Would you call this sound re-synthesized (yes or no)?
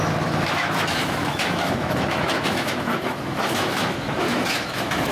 yes